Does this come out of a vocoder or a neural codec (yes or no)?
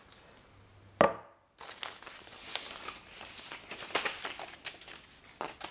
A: no